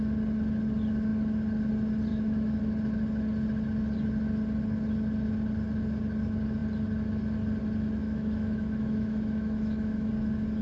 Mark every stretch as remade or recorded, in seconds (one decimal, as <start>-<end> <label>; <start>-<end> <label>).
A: 0.0-2.1 recorded; 2.1-2.6 remade; 2.6-8.0 recorded; 8.0-10.1 remade; 10.1-10.6 recorded